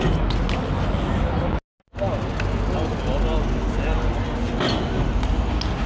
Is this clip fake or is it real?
real